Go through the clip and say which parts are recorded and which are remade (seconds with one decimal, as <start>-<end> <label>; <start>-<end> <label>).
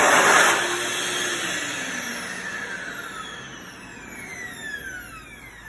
0.0-5.7 recorded